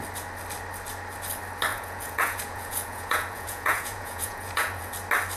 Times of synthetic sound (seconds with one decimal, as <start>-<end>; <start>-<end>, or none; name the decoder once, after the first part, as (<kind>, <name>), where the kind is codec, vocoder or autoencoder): 1.7-4.9 (vocoder, Vocos)